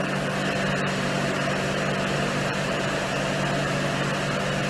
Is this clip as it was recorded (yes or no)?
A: yes